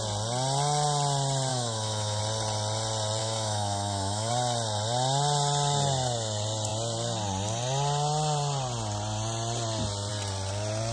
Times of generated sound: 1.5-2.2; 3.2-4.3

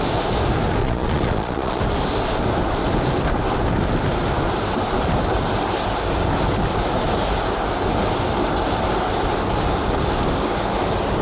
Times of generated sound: 0.8-1.8

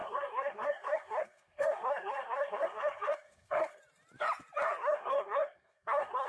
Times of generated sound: 0.0-3.8; 4.8-6.3

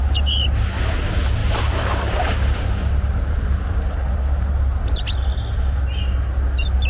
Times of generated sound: 1.4-5.0

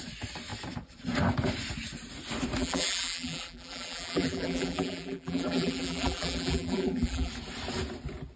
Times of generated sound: 2.6-7.3

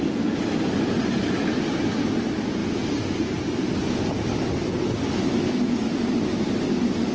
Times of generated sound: none